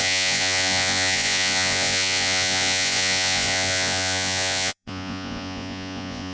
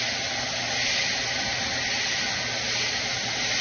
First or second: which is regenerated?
first